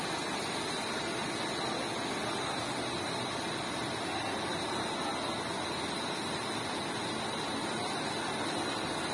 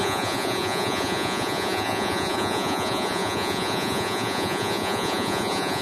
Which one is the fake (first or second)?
second